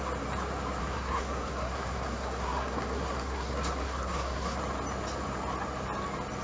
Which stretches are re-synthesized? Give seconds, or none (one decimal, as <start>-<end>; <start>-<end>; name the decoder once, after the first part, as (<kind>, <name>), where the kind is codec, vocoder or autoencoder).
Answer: 0.8-4.6 (codec, SNAC)